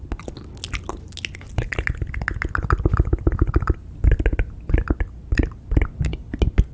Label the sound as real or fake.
real